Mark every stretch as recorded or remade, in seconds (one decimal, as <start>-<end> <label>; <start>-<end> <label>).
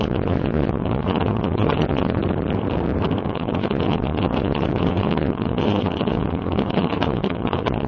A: 0.0-2.2 remade; 2.2-3.2 recorded; 3.2-7.9 remade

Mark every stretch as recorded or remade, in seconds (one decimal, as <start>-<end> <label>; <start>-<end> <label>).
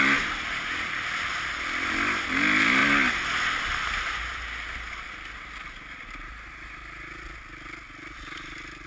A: 0.0-8.9 recorded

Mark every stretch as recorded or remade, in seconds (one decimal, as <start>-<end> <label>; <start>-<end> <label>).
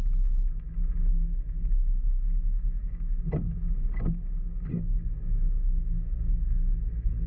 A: 0.0-1.1 recorded; 1.1-3.2 remade; 3.2-4.7 recorded; 4.7-7.3 remade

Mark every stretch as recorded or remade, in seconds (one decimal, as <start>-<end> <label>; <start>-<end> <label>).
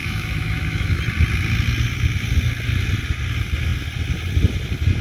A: 0.0-1.0 remade; 1.0-5.0 recorded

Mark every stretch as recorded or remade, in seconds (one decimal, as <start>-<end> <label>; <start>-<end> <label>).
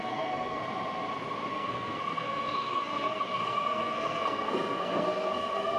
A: 0.0-0.6 remade; 0.6-1.5 recorded; 1.5-5.8 remade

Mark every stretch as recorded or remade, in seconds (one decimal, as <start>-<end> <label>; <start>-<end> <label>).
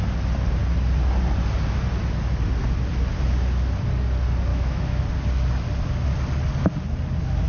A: 0.0-4.5 recorded; 4.5-5.0 remade; 5.0-7.5 recorded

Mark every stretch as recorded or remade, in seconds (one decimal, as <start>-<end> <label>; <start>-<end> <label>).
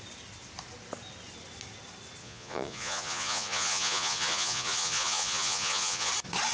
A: 0.0-2.2 recorded; 2.2-6.1 remade; 6.1-6.5 recorded